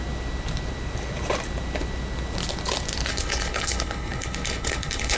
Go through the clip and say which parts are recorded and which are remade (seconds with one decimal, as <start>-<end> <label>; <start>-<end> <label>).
0.0-3.1 recorded; 3.1-5.2 remade